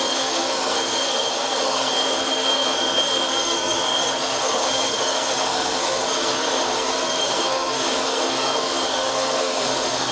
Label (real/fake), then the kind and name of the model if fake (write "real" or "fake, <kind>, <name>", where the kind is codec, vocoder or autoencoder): fake, codec, SNAC